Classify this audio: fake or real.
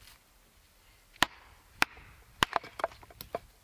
real